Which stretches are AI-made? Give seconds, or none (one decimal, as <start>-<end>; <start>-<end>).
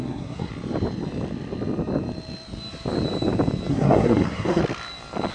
0.0-0.5; 3.7-4.6